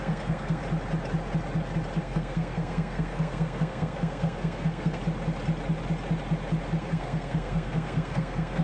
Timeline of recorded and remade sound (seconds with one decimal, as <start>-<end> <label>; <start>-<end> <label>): 0.0-0.6 remade; 0.6-2.0 recorded; 2.0-5.0 remade; 5.0-6.8 recorded; 6.8-8.6 remade

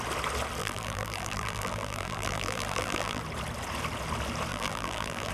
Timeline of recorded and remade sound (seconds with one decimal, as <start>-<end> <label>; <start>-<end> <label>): 0.0-0.6 recorded; 0.6-3.2 remade; 3.2-4.5 recorded; 4.5-5.3 remade